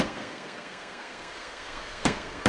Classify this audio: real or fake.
fake